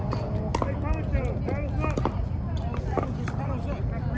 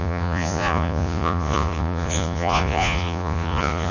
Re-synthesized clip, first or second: second